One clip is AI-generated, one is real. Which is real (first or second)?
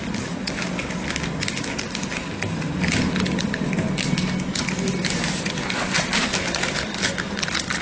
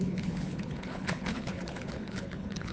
first